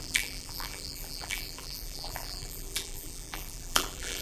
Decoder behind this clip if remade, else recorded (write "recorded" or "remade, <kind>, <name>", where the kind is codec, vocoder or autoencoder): remade, vocoder, BigVGAN v2